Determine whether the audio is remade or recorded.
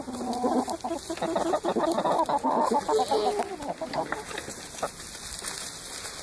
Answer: recorded